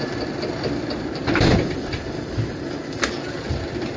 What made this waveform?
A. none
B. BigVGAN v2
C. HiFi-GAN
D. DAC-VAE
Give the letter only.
B